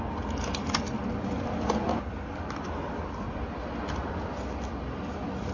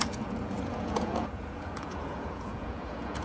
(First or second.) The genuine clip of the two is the first